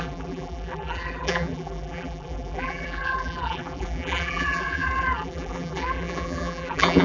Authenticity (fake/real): fake